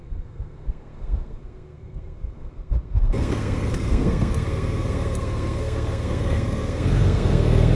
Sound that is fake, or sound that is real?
fake